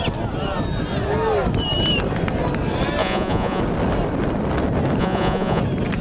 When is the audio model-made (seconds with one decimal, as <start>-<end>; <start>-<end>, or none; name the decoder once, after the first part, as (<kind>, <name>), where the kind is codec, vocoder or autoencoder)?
3.0-3.6 (vocoder, Vocos); 5.0-5.6